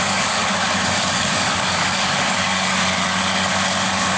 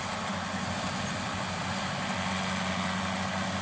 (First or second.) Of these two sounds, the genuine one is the second